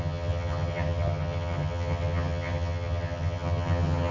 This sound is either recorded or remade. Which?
remade